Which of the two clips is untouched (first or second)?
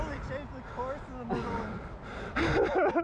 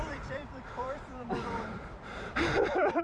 first